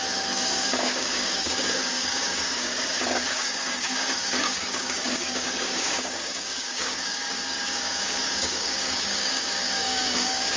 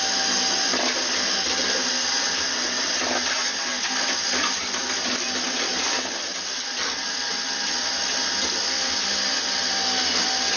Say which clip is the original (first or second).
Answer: second